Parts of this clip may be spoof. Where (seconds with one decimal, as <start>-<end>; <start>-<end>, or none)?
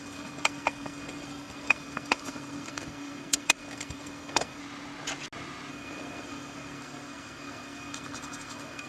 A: 0.0-4.6; 5.7-8.9